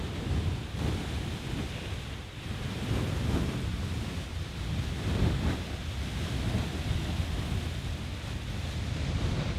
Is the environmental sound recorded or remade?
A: recorded